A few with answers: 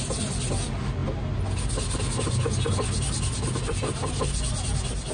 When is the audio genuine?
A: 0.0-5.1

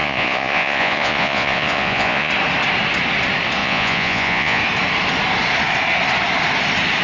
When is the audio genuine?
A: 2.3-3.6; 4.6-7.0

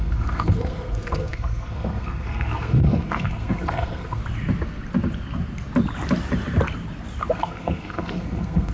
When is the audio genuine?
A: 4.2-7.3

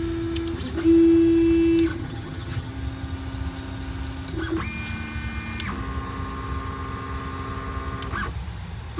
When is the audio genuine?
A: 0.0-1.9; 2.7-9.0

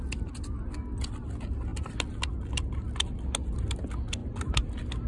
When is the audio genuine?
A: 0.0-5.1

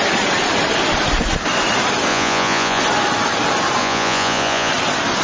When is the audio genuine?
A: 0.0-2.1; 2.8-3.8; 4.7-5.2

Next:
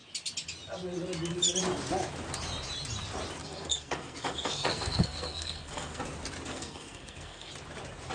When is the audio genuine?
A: 0.0-3.4; 6.0-6.5; 7.5-8.1

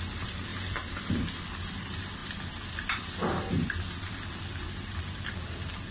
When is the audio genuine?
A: 0.0-5.9